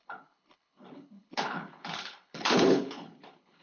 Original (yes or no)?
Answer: no